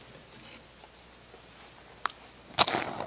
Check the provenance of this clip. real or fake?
real